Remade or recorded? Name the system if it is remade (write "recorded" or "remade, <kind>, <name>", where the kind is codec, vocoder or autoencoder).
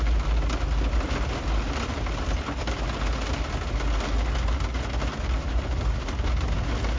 recorded